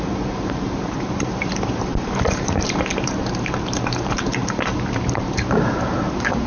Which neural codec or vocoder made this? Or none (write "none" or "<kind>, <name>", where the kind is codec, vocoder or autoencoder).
vocoder, BigVGAN v2